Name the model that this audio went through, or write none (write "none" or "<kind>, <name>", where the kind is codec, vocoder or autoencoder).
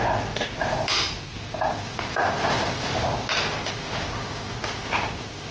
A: none